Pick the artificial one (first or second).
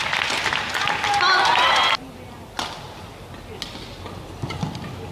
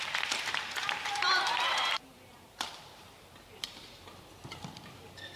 second